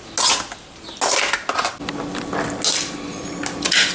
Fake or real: real